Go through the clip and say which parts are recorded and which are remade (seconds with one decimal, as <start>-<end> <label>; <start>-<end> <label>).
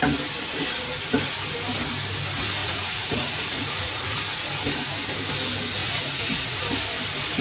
0.0-2.6 recorded; 2.6-4.2 remade; 4.2-5.8 recorded; 5.8-6.6 remade; 6.6-7.4 recorded